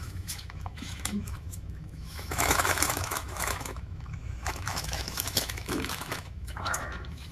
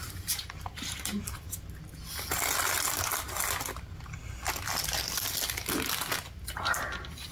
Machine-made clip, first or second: first